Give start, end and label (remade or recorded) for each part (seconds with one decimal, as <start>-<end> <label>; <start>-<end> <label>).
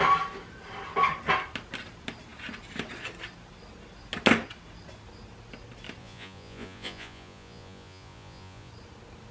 0.0-6.0 recorded; 6.0-8.7 remade; 8.7-9.3 recorded